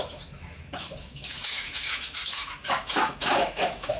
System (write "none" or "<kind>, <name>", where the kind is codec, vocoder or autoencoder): autoencoder, DAC-VAE